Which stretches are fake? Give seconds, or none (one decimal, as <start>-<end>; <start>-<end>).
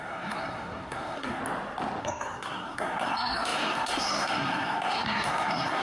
0.0-1.4; 2.0-5.8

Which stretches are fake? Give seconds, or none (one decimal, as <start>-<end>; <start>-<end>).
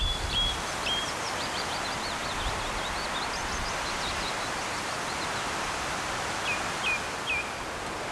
none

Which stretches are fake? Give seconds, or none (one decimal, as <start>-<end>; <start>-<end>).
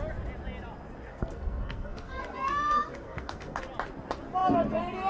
1.1-3.6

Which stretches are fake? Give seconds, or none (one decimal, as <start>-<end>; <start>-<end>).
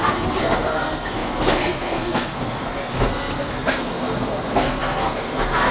0.0-5.7